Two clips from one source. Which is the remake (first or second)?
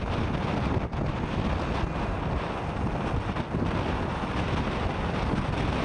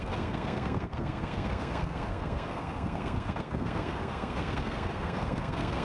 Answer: second